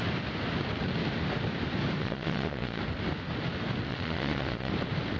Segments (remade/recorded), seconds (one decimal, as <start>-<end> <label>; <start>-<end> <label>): 0.0-2.0 recorded; 2.0-2.8 remade; 2.8-3.9 recorded; 3.9-4.7 remade; 4.7-5.2 recorded